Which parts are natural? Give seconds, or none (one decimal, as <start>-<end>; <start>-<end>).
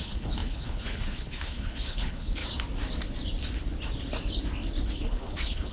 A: 2.4-4.9